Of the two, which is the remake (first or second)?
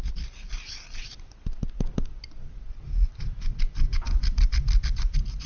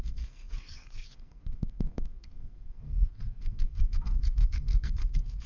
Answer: second